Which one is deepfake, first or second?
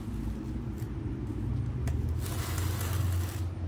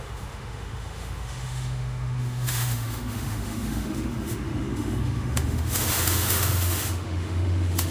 second